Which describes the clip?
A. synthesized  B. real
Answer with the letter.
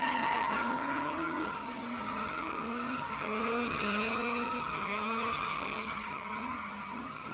A